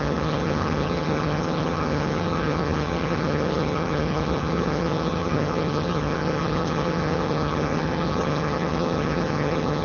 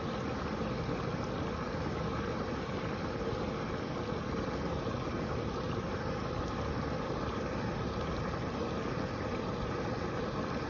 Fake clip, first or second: first